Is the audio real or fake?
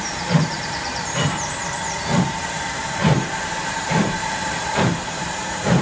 fake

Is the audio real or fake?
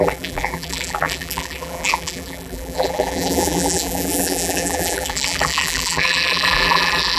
fake